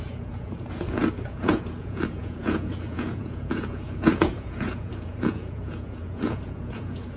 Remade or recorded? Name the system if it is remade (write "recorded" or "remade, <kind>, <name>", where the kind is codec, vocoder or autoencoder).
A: remade, vocoder, Vocos